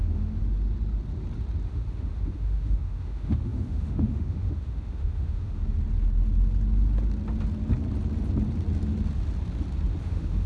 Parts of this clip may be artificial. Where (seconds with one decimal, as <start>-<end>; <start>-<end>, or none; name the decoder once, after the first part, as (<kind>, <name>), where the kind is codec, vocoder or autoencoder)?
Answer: 0.0-0.4 (autoencoder, DAC-VAE); 1.7-5.6; 10.0-10.5